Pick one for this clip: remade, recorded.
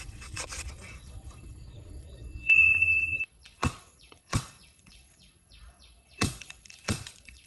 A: remade